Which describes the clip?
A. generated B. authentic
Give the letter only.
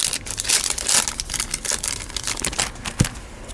B